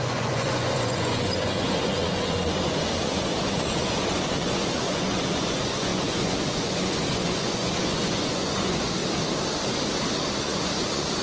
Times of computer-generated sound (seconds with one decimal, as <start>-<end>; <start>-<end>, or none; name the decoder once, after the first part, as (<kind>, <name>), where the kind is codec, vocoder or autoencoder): 0.0-9.0 (vocoder, Vocos); 10.4-11.2